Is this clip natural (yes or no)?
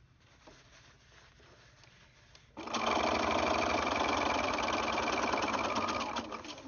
yes